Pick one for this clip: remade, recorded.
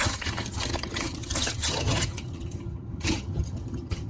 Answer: remade